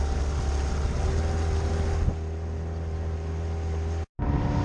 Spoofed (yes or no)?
no